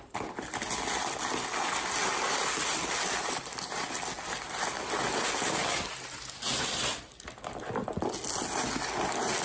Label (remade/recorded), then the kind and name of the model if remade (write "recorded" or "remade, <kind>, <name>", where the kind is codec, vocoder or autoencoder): recorded